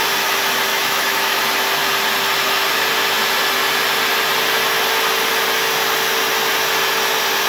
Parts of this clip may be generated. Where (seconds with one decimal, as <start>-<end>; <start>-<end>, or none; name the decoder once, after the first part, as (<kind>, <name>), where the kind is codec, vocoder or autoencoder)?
0.7-1.4 (autoencoder, DAC-VAE)